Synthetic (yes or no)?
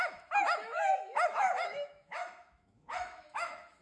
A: yes